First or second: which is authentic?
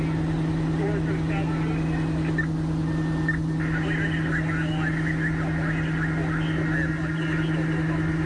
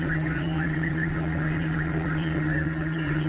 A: first